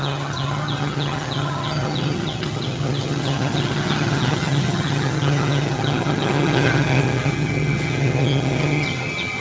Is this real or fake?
fake